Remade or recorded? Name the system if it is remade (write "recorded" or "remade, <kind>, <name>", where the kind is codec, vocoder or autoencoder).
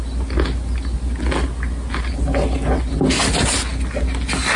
recorded